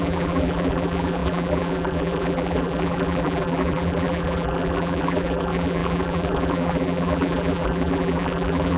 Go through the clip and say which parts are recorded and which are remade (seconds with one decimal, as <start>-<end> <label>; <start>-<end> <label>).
0.0-8.8 remade